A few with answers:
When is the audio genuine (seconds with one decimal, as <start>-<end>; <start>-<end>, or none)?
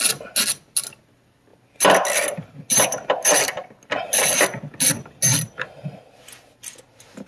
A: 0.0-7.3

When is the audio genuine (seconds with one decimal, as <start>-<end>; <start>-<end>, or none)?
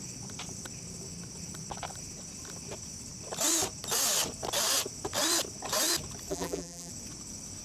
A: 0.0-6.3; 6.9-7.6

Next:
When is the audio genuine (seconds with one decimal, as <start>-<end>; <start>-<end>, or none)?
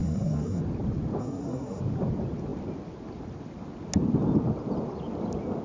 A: 0.6-1.2; 1.8-5.6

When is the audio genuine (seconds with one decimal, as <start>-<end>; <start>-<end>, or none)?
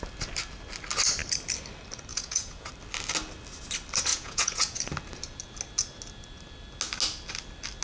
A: 0.0-2.1; 2.7-4.1; 4.8-7.8